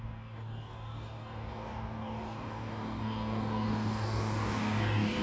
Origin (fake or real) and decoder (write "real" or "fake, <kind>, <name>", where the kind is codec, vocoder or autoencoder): fake, codec, DAC